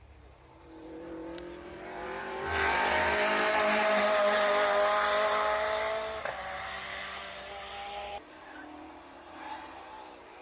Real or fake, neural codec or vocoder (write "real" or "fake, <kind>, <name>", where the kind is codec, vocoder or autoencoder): fake, vocoder, BigVGAN v2